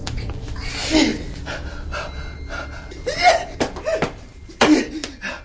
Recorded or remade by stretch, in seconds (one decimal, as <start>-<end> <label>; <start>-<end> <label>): 0.0-0.7 remade; 0.7-5.4 recorded